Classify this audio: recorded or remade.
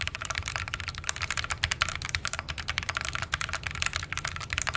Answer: recorded